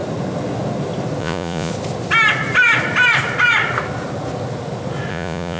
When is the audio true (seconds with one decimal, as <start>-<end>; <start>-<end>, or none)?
0.0-1.2; 1.7-5.1